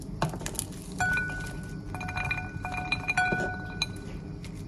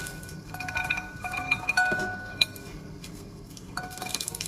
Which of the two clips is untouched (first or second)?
first